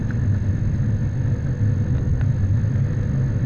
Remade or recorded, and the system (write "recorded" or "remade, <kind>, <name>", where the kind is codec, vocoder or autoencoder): recorded